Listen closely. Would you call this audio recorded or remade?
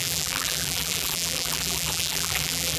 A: remade